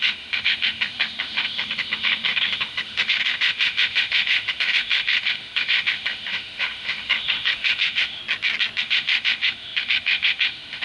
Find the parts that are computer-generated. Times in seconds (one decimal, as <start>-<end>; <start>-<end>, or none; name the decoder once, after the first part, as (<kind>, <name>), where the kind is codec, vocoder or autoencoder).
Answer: 0.0-8.2 (autoencoder, DAC-VAE); 8.8-10.8